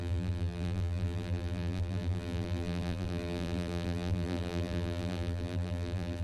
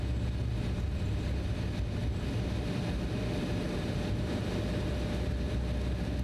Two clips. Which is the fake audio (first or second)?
first